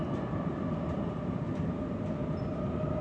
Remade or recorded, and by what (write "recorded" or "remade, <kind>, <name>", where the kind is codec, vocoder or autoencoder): remade, vocoder, BigVGAN v2